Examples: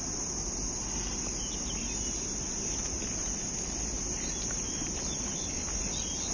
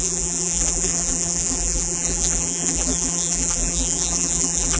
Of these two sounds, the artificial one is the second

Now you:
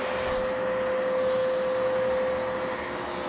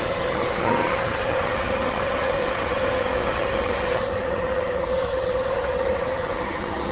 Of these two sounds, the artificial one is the second